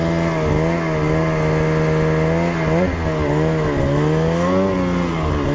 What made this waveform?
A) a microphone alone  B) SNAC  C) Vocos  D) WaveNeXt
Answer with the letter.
A